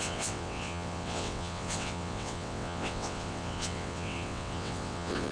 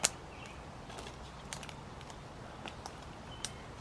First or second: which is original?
second